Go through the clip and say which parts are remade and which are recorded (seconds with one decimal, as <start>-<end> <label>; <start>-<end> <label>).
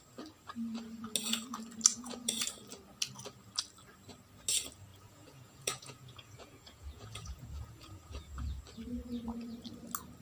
0.0-1.9 recorded; 1.9-2.4 remade; 2.4-4.9 recorded; 4.9-8.6 remade; 8.6-10.2 recorded